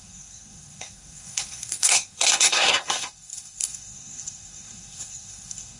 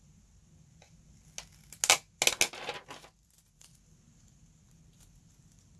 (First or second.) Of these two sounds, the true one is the second